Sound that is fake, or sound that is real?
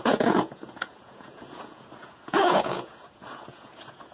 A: fake